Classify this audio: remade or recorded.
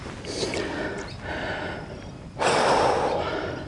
recorded